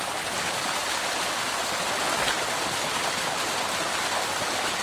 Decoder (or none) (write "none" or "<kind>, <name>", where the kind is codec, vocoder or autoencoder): none